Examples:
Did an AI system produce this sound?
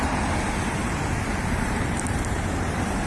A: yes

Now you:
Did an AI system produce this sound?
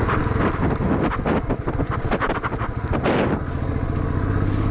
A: no